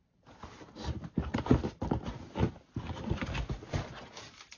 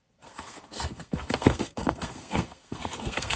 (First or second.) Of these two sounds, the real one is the first